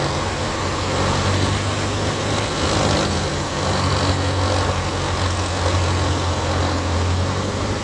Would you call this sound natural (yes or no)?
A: yes